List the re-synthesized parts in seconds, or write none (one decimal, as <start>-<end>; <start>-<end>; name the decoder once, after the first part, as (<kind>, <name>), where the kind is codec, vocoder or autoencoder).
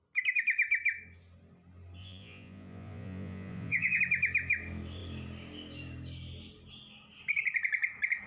2.0-4.0 (vocoder, Vocos)